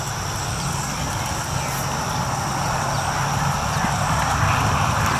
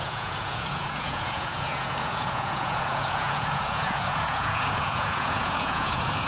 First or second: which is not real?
second